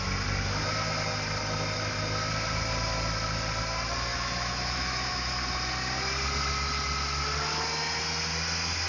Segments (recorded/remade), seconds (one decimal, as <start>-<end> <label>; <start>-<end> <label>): 0.0-4.1 recorded; 4.1-5.3 remade; 5.3-8.9 recorded